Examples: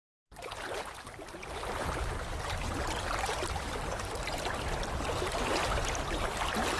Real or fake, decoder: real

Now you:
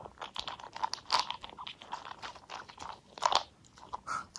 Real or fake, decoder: real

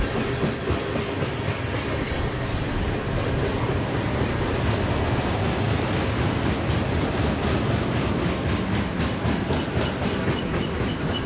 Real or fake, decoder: real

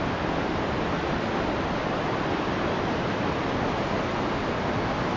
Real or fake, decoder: real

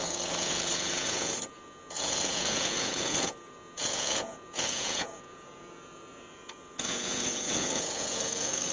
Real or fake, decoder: fake, vocoder, Vocos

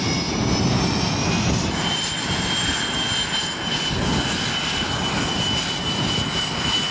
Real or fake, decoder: real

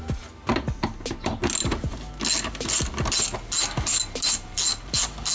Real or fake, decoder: real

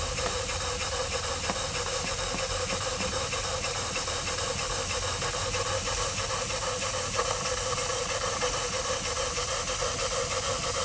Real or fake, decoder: real